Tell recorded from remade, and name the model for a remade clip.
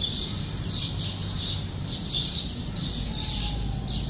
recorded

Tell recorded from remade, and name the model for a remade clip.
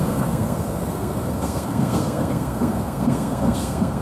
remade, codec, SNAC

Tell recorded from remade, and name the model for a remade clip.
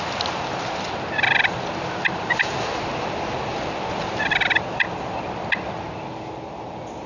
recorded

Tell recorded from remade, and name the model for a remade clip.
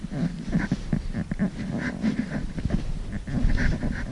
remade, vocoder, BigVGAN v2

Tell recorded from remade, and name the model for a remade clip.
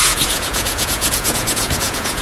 remade, vocoder, Vocos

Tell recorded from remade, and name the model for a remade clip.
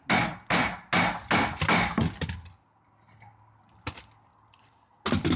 recorded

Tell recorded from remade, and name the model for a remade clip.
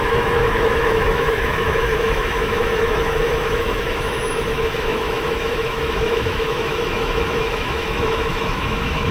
remade, autoencoder, DAC-VAE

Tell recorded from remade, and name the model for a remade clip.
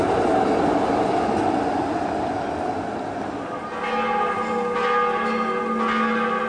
recorded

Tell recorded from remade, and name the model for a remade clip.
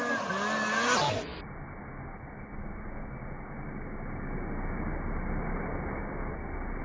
recorded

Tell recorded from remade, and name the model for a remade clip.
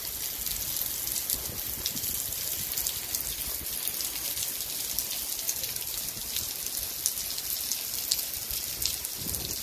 recorded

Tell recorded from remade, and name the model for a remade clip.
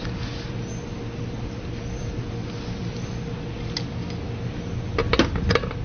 recorded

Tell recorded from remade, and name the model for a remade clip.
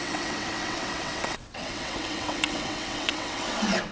remade, vocoder, WaveNeXt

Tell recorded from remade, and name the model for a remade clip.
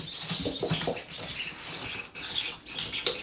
recorded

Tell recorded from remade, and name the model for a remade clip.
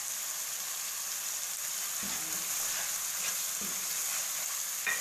recorded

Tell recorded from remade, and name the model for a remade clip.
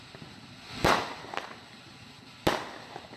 recorded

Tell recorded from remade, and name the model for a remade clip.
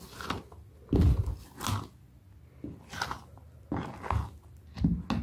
recorded